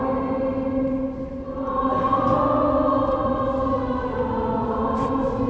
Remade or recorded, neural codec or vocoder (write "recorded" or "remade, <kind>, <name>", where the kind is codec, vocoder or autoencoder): recorded